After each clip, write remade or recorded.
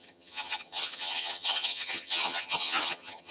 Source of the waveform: remade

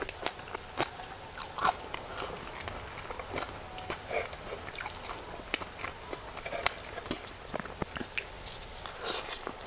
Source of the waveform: recorded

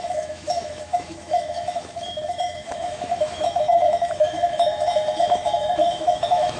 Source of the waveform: remade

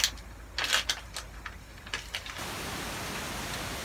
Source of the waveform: recorded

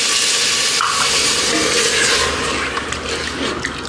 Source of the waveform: recorded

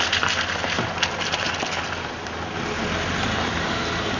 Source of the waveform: recorded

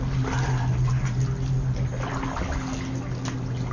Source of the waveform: recorded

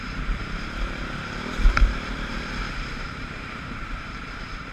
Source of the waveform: remade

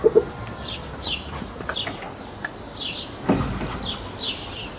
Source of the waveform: recorded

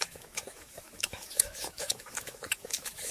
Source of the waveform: remade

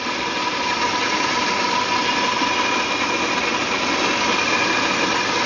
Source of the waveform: recorded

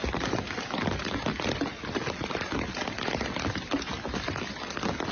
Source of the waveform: recorded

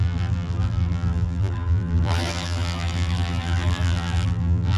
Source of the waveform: remade